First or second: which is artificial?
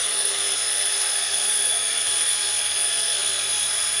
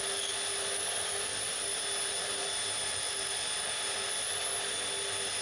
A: first